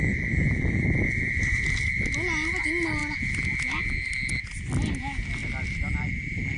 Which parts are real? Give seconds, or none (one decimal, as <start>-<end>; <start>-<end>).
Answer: 0.0-6.6